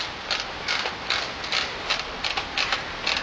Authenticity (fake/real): real